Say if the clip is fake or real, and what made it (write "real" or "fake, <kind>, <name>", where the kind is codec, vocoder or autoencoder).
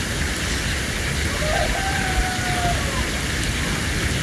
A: real